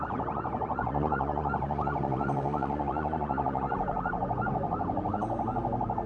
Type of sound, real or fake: fake